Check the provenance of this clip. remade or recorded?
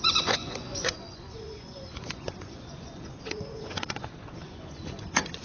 remade